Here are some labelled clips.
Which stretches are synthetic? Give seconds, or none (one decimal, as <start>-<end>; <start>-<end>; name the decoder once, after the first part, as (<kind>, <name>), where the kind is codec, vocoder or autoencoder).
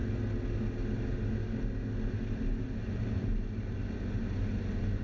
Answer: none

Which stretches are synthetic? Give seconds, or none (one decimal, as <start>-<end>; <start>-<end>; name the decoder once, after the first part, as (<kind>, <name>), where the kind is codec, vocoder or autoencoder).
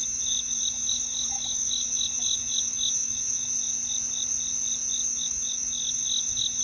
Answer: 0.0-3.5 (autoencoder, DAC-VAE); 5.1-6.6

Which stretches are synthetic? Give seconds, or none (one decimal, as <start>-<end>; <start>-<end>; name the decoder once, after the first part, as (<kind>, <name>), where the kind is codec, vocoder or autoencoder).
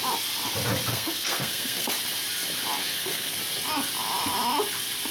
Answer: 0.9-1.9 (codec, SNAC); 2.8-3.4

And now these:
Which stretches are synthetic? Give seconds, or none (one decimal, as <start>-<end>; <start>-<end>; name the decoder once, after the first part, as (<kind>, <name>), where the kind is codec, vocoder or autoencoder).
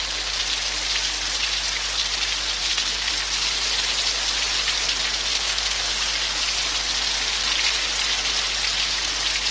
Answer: 2.6-3.1 (codec, SNAC); 5.3-5.9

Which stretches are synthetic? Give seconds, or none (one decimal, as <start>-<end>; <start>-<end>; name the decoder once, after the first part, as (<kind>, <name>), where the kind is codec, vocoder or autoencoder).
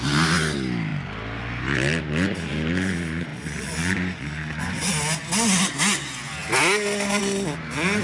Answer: 3.3-4.9 (vocoder, Vocos)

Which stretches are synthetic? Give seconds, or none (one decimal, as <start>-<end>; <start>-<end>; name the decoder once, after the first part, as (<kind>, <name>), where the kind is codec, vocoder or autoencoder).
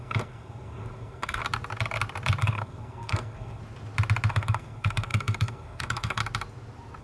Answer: 0.0-1.4 (codec, SNAC); 2.4-3.6; 4.3-6.2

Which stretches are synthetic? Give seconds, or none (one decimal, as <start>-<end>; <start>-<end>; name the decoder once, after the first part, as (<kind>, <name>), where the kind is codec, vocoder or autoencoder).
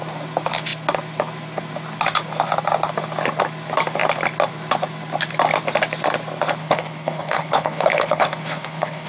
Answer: 6.6-9.1 (codec, HILCodec)